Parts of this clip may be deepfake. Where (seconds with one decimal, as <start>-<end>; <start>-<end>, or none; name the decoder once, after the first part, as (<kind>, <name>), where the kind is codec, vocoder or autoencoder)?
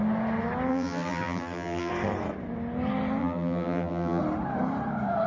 0.7-1.9 (vocoder, BigVGAN v2); 3.2-4.2